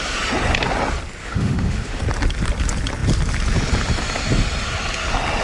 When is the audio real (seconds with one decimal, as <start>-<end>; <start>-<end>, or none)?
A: 0.0-1.2; 2.0-5.4